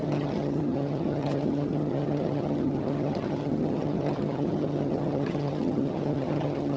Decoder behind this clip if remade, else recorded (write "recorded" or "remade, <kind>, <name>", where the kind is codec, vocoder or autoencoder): remade, vocoder, HiFi-GAN